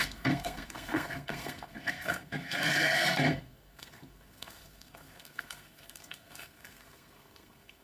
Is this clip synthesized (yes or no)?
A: yes